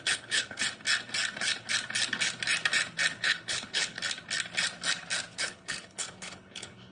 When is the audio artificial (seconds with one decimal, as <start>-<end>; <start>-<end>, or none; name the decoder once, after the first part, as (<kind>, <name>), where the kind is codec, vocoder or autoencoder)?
0.0-0.6 (codec, HILCodec); 3.2-4.0; 5.4-6.9